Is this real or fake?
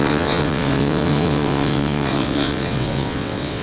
fake